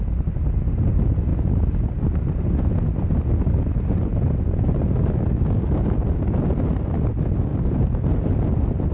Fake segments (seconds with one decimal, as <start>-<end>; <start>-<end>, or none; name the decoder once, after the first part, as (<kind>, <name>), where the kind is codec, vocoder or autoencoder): 4.1-4.8 (vocoder, BigVGAN v2); 7.5-8.0